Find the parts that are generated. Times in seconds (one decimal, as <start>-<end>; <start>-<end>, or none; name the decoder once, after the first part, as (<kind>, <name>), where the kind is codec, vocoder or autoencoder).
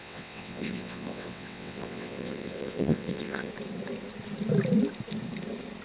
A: 0.0-3.5 (vocoder, WaveNeXt)